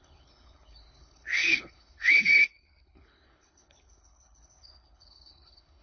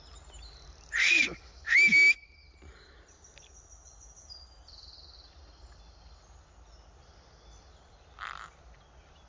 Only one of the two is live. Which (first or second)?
second